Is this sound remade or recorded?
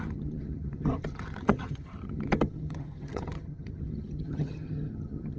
remade